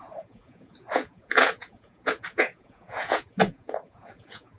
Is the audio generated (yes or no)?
yes